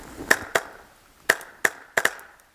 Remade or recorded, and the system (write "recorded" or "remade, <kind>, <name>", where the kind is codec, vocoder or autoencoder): recorded